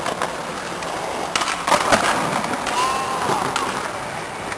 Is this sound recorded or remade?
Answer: recorded